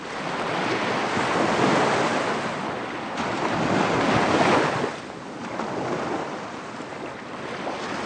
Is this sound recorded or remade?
recorded